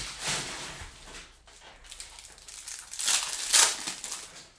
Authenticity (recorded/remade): recorded